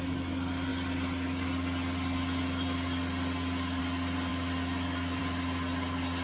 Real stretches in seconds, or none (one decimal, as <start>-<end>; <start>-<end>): 0.0-6.2